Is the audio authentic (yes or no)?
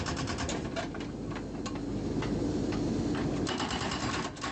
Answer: yes